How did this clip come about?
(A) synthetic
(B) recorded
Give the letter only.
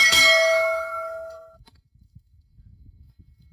A